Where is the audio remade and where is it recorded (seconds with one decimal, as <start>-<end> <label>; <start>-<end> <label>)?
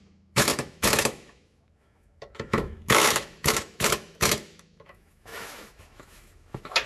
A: 0.0-6.9 remade